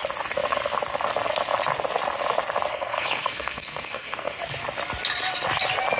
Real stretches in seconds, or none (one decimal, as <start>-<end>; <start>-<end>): 0.0-2.7; 4.4-6.0